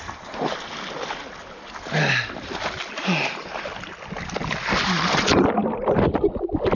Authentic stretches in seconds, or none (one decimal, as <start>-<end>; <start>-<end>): 0.0-6.7